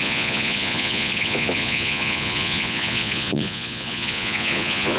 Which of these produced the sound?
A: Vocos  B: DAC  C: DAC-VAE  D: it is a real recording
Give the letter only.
A